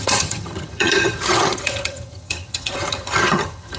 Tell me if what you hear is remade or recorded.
remade